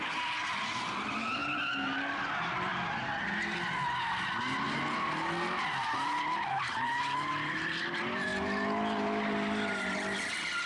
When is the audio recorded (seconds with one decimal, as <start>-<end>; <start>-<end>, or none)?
1.4-2.2; 2.7-6.5; 8.3-10.7